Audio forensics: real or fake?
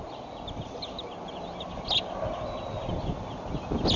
real